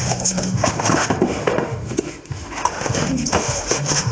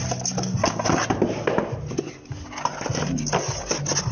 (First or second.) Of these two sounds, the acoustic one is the second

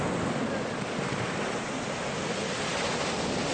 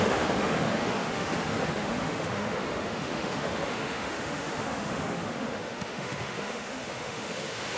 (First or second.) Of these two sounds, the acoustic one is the first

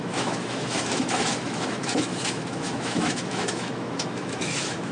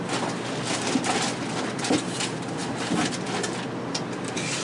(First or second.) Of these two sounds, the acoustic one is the second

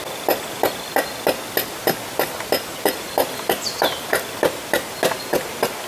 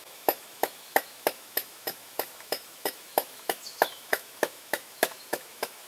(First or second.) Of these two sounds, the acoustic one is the first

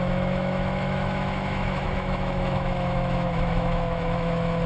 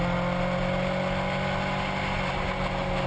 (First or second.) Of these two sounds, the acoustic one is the second